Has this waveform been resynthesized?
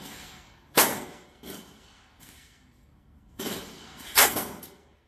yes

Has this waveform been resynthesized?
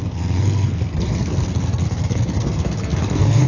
yes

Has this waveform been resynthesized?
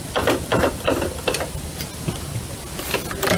no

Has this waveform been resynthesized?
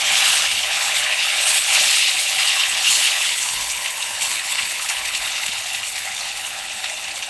yes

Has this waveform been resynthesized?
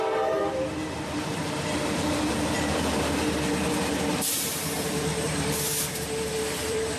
yes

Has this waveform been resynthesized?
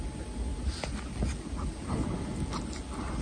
no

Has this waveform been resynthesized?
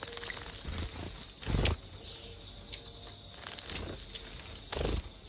no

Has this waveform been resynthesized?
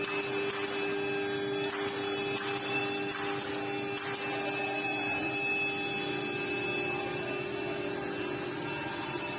no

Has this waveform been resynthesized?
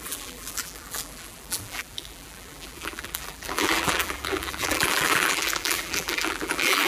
yes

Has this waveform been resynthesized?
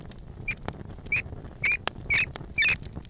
no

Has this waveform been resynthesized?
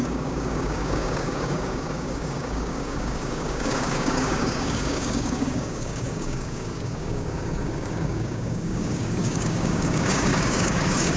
yes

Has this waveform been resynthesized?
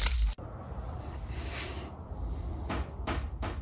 yes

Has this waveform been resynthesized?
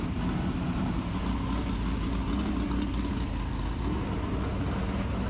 no